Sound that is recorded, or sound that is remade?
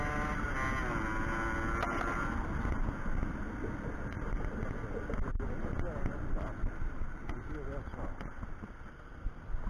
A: recorded